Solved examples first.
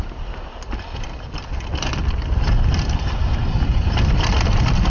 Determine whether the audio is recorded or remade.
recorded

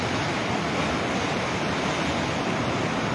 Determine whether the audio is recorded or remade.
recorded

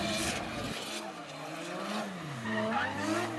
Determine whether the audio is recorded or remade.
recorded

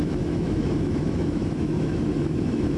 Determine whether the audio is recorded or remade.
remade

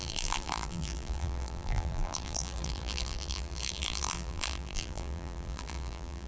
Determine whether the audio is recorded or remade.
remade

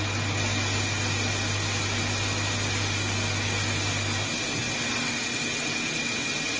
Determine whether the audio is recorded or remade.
recorded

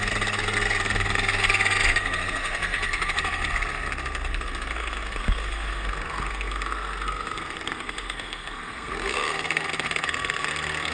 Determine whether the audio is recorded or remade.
remade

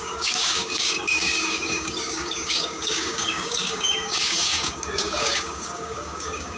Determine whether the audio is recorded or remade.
remade